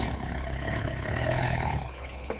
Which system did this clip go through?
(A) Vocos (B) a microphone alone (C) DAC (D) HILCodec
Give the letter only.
D